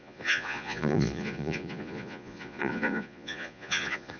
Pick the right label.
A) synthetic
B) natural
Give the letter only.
A